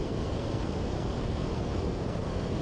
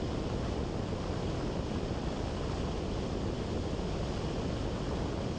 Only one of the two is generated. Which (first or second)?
first